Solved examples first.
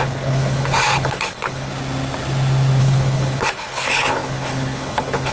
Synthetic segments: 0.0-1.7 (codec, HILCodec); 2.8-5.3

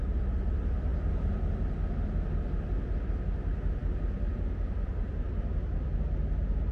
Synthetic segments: none